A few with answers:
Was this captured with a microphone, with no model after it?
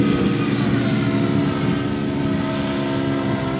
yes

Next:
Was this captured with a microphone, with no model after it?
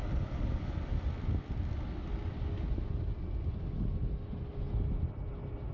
yes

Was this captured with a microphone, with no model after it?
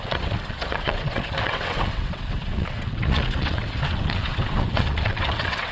no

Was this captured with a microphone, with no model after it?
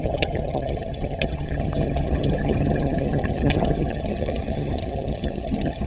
no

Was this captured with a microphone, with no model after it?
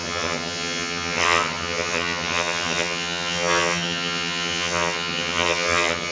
no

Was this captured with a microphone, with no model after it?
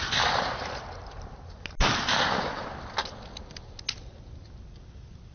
yes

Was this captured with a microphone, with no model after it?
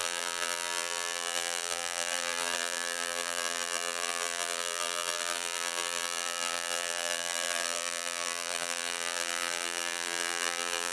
no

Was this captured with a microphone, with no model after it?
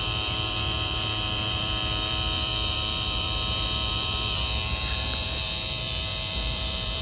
no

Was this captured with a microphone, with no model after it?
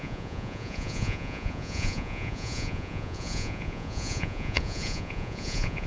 no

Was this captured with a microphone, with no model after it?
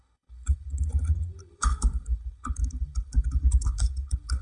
no